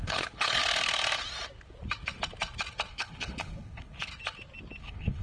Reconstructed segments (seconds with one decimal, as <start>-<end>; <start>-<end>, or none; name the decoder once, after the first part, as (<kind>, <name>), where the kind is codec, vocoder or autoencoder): 0.0-0.6 (codec, HILCodec); 2.9-4.1; 4.8-5.2